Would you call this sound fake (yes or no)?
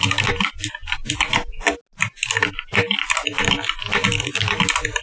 no